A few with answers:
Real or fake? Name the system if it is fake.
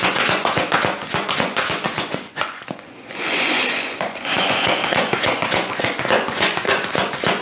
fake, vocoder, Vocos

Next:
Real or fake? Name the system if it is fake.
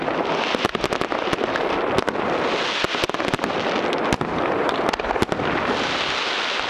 real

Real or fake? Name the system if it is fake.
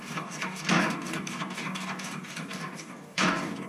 fake, codec, DAC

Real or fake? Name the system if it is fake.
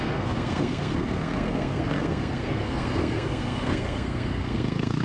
fake, codec, SNAC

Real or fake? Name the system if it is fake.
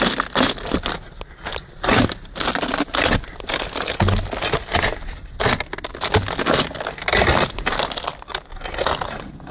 real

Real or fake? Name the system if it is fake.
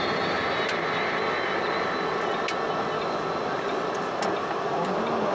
real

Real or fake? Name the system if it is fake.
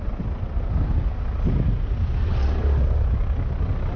real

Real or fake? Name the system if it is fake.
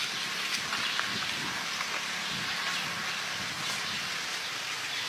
real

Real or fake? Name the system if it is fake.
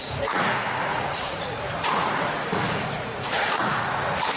fake, vocoder, Vocos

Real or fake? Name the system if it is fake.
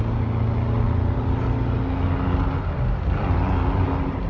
real